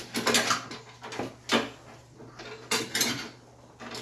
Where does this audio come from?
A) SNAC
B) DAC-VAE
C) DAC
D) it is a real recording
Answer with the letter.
D